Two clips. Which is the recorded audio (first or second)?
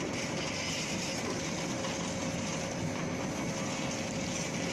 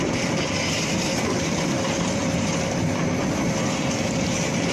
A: first